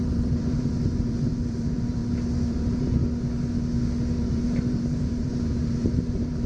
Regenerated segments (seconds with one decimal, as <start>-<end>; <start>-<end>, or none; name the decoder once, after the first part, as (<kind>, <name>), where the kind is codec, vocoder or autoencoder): 0.0-2.0 (vocoder, BigVGAN v2); 2.5-3.0; 4.3-6.5